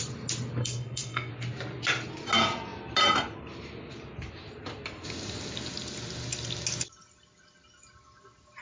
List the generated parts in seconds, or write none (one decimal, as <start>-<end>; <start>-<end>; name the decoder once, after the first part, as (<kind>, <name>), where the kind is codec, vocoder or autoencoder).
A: 0.6-1.3 (codec, SNAC)